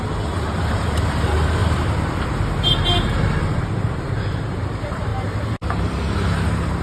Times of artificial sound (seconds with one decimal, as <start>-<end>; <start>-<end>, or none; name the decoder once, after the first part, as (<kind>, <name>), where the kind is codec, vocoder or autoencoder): 0.0-5.1 (vocoder, BigVGAN v2)